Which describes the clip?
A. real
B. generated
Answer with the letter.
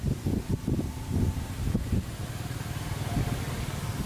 A